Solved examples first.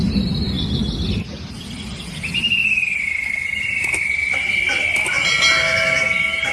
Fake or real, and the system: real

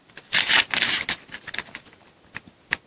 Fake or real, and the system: real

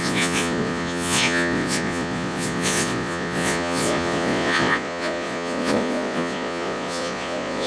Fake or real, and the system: fake, vocoder, Vocos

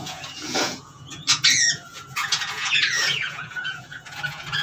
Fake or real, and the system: fake, vocoder, Vocos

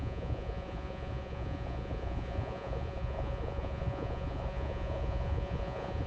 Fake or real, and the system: fake, vocoder, Vocos